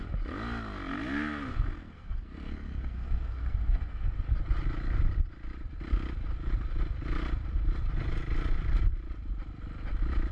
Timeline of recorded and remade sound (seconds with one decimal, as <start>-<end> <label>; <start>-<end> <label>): 0.0-1.5 recorded; 1.5-4.2 remade; 4.2-10.3 recorded